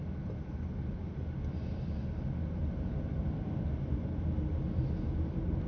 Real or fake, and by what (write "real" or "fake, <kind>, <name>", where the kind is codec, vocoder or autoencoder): real